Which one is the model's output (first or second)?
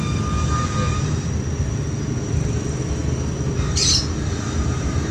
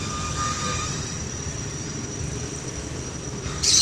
second